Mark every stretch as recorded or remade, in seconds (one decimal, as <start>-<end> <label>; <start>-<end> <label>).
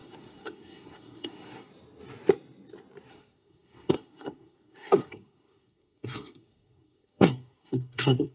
0.0-1.7 remade; 1.7-3.1 recorded; 3.1-8.3 remade